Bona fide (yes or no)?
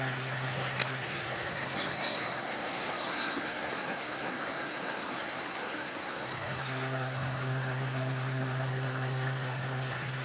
no